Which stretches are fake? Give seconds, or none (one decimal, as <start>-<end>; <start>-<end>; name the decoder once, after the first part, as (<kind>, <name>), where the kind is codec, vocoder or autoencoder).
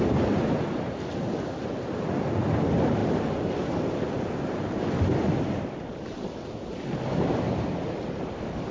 none